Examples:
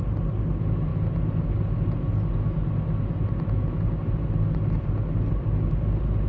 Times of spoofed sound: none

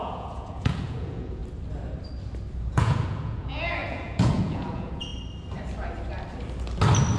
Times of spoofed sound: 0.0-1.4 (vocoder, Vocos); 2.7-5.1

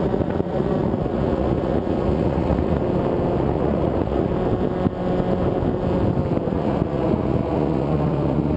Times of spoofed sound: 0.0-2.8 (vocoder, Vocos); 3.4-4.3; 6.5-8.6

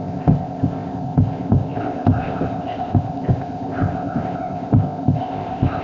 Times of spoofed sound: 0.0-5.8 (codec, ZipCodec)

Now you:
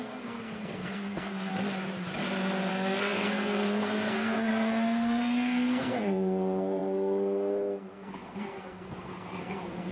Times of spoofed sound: 0.0-1.5 (codec, SNAC); 2.7-9.9